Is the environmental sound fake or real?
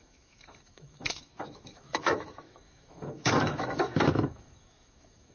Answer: fake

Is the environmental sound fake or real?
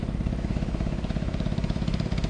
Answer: fake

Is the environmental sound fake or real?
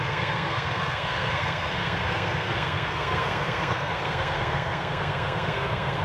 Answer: fake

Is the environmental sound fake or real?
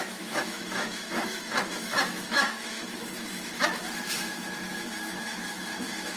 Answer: fake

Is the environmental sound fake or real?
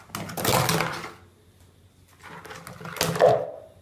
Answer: real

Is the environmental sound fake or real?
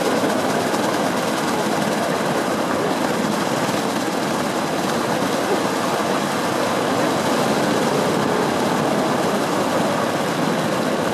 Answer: real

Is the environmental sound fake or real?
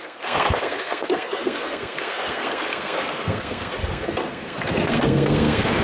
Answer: fake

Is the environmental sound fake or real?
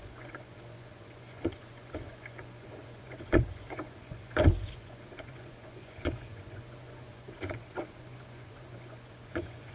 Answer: fake